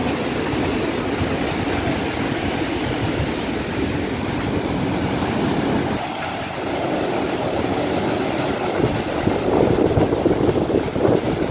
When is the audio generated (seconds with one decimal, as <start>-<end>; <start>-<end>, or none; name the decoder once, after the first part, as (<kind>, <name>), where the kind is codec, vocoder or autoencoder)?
none